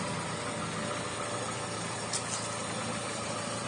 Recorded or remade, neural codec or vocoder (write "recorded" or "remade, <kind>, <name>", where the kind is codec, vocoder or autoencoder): recorded